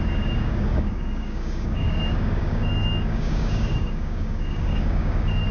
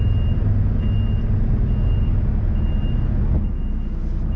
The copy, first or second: first